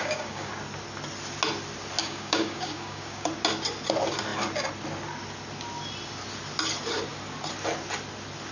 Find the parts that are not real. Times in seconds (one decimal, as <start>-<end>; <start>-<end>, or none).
0.0-0.5; 2.0-3.3